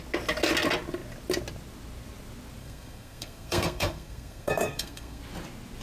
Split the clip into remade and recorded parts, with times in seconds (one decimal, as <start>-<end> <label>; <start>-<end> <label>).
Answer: 0.0-2.6 recorded; 2.6-5.2 remade; 5.2-5.8 recorded